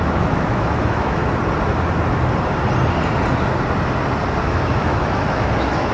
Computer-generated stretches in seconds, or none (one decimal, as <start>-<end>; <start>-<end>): 0.0-1.2; 4.4-5.9